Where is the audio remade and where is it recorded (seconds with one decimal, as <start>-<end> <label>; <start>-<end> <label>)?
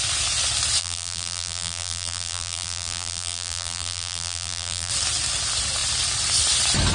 0.0-0.8 recorded; 0.8-4.9 remade; 4.9-6.9 recorded